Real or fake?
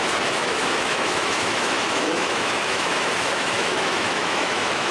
fake